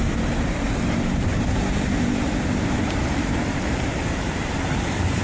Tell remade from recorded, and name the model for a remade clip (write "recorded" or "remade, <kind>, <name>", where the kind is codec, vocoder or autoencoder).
remade, vocoder, BigVGAN v2